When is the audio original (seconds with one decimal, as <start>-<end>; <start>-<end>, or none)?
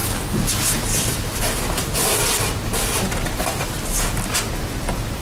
0.0-1.4; 2.0-5.2